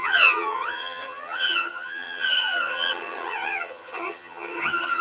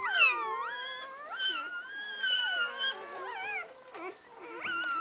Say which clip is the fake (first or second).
first